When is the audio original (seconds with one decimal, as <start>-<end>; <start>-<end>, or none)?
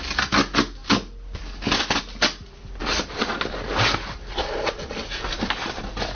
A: 0.0-0.8; 2.0-2.8